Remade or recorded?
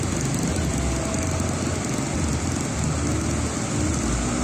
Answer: recorded